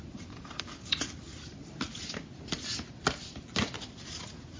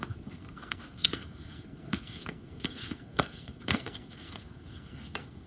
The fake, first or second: second